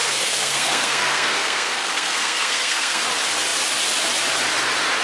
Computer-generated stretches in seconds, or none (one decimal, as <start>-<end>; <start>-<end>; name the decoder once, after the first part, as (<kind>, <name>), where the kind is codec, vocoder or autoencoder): 0.0-3.0 (codec, SNAC)